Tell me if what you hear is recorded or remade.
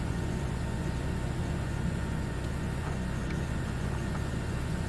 remade